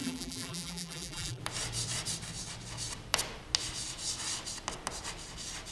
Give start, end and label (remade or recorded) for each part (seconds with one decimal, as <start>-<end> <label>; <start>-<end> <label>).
0.0-1.4 remade; 1.4-5.7 recorded